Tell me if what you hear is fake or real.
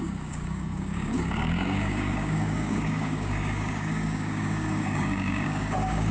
fake